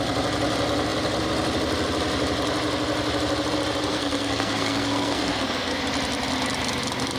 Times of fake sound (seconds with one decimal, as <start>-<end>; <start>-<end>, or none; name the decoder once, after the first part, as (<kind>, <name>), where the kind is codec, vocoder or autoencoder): 3.9-5.8 (codec, SNAC)